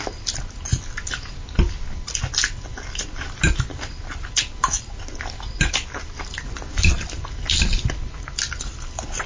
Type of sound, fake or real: real